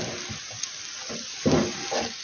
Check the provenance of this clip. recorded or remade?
recorded